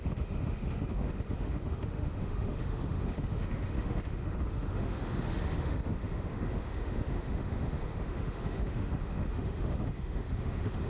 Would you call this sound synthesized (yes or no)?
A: yes